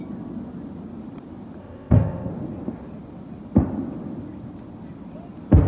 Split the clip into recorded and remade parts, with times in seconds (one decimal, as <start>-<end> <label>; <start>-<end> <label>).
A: 0.0-1.6 recorded; 1.6-2.3 remade; 2.3-5.7 recorded